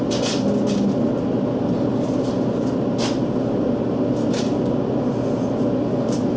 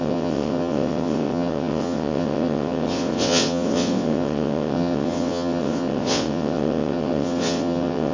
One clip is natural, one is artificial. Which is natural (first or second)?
first